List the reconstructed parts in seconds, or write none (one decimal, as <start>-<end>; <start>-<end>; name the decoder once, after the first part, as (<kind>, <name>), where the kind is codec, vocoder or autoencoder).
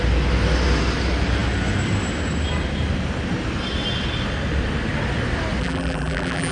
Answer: 5.6-6.5 (vocoder, BigVGAN v2)